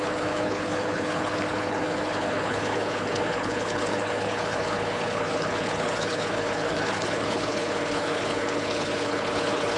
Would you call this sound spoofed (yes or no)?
yes